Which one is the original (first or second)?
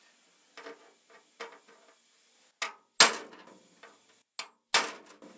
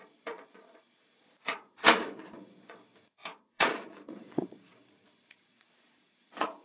first